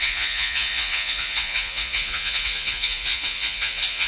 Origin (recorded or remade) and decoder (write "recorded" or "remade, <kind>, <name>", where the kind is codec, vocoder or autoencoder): remade, vocoder, Vocos